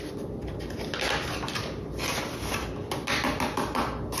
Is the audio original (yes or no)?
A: yes